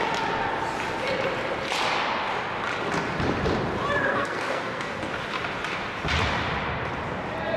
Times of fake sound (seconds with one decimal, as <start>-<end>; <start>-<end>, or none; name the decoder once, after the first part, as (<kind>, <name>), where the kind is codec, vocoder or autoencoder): 4.0-5.1 (codec, SNAC)